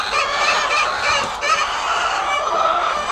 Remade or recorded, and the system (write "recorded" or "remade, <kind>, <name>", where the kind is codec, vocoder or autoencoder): recorded